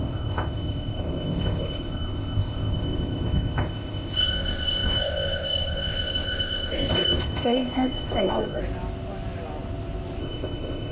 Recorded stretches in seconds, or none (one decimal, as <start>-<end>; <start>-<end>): 8.6-10.2